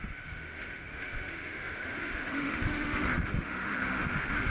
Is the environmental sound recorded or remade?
remade